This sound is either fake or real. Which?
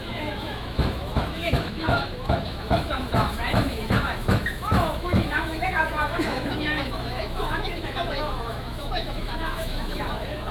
fake